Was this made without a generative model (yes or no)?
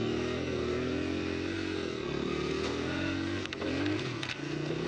no